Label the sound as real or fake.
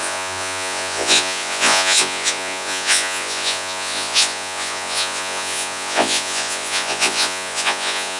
fake